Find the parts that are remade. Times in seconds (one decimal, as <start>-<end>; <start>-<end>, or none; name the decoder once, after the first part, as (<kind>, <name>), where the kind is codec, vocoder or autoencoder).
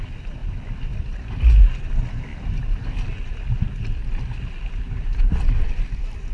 none